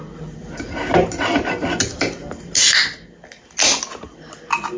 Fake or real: real